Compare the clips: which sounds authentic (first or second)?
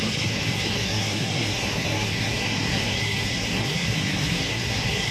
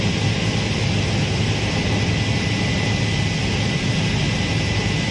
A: second